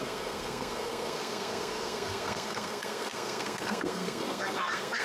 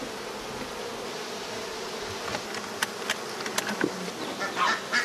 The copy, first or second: first